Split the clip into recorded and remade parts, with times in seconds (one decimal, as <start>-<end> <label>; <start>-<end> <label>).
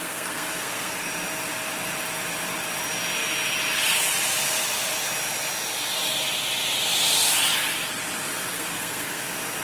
0.0-1.1 remade; 1.1-8.5 recorded; 8.5-9.2 remade; 9.2-9.6 recorded